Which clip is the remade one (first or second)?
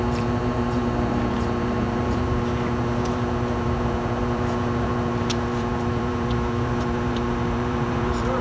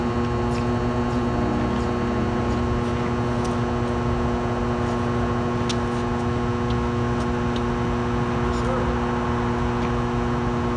first